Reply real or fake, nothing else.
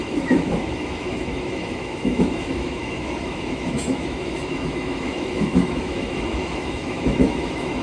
fake